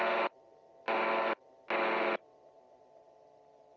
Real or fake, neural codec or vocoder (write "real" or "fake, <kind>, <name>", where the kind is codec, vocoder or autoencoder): real